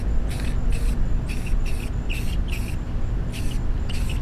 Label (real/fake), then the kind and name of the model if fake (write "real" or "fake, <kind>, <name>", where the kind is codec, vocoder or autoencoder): real